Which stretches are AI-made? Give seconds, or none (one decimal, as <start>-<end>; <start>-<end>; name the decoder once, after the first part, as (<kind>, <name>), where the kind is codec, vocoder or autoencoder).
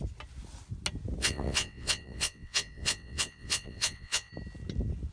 1.2-4.3 (vocoder, WaveNeXt)